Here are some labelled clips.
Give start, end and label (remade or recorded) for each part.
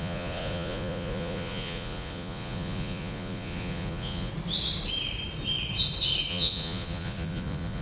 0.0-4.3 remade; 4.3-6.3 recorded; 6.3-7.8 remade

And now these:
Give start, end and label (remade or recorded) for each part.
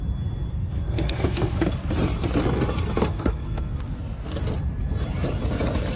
0.0-0.5 recorded; 0.5-1.9 remade; 1.9-3.0 recorded; 3.0-4.4 remade; 4.4-6.0 recorded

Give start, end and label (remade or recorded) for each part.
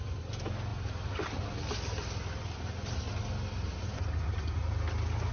0.0-5.3 recorded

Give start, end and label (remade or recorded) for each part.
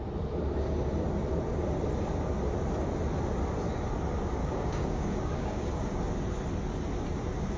0.0-4.4 recorded; 4.4-5.8 remade; 5.8-7.6 recorded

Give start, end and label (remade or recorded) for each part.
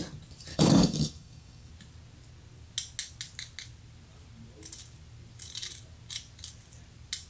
0.0-0.5 recorded; 0.5-1.7 remade; 1.7-7.3 recorded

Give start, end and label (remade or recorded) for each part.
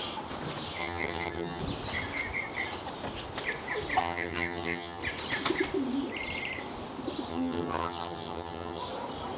0.0-0.8 recorded; 0.8-1.6 remade; 1.6-4.0 recorded; 4.0-5.0 remade; 5.0-7.3 recorded; 7.3-8.8 remade; 8.8-9.4 recorded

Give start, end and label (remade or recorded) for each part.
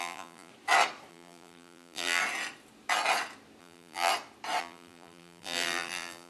0.0-0.5 remade; 0.5-1.1 recorded; 1.1-2.2 remade; 2.2-3.6 recorded; 3.6-4.1 remade; 4.1-4.6 recorded; 4.6-6.3 remade